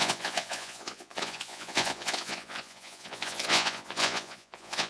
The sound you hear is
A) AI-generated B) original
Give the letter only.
A